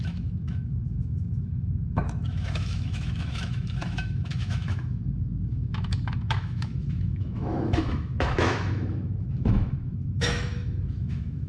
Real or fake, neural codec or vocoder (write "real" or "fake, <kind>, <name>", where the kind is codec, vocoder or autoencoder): fake, autoencoder, DAC-VAE